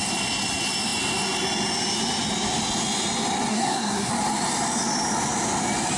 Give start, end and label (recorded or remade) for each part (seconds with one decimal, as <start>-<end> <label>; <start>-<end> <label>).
0.0-3.5 recorded; 3.5-4.1 remade; 4.1-6.0 recorded